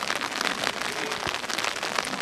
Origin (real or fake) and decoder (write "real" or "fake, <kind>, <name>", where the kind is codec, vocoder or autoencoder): real